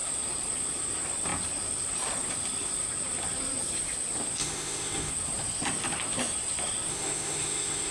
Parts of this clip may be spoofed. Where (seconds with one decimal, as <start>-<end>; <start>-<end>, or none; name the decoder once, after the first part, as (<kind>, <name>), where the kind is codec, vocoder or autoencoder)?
4.4-5.1 (autoencoder, DAC-VAE); 6.9-7.9